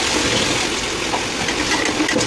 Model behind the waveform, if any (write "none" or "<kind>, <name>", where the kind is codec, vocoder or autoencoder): vocoder, BigVGAN v2